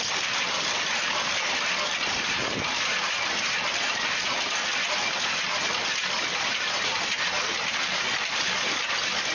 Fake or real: real